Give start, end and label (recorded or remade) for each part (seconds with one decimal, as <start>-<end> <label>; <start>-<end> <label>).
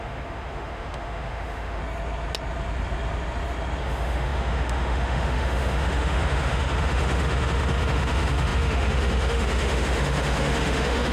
0.0-1.8 remade; 1.8-3.8 recorded; 3.8-11.1 remade